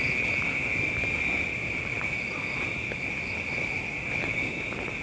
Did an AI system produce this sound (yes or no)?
no